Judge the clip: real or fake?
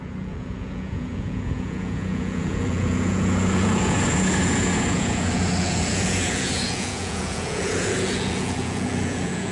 fake